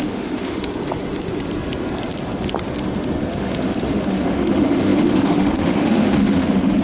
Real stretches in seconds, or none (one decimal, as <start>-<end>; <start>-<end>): 0.6-3.3